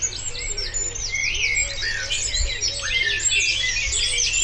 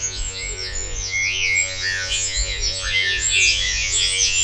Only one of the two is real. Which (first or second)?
first